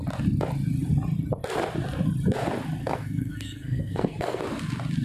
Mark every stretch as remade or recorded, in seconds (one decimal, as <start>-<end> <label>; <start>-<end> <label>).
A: 0.0-2.8 recorded; 2.8-4.4 remade; 4.4-5.0 recorded